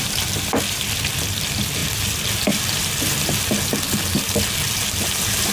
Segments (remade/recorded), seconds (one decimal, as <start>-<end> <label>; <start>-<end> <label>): 0.0-5.5 recorded